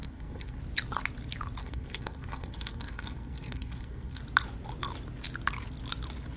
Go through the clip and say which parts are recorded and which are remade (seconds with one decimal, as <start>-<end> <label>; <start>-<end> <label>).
0.0-0.6 remade; 0.6-1.6 recorded; 1.6-4.2 remade; 4.2-6.4 recorded